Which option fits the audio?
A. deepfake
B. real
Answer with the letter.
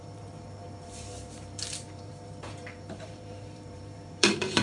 A